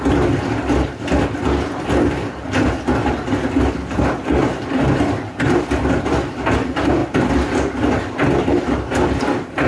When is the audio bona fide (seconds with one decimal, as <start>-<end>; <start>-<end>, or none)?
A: 0.0-9.7